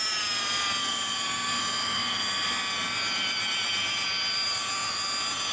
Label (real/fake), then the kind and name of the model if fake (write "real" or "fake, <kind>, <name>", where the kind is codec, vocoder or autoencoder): real